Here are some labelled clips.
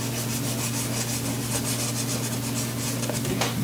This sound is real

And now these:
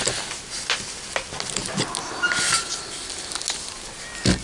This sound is real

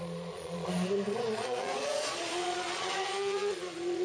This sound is fake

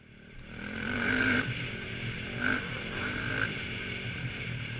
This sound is fake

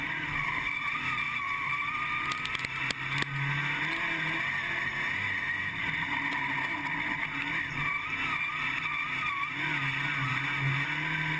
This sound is real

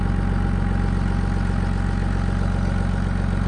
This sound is real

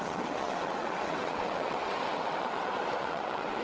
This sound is fake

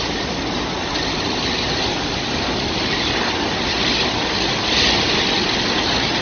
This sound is real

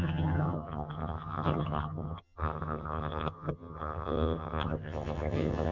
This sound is fake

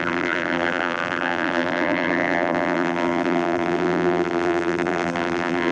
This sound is fake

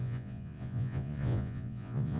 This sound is fake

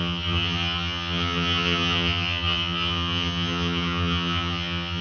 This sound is fake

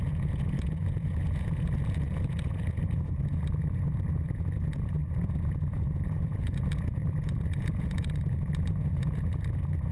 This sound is fake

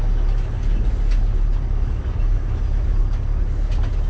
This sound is real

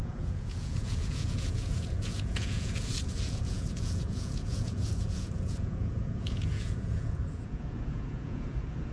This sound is fake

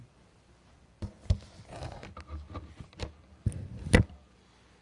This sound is real